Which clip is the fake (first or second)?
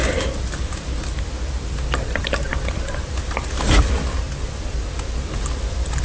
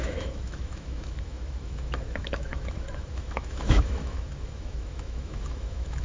second